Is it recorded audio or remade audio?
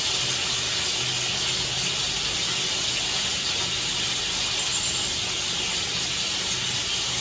recorded